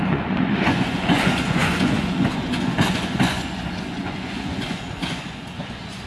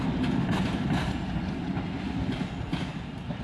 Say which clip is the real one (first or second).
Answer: second